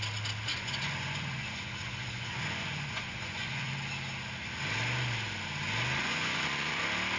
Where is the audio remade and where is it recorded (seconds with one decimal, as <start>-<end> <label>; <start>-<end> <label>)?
0.0-0.5 recorded; 0.5-3.7 remade; 3.7-6.0 recorded; 6.0-6.8 remade; 6.8-7.2 recorded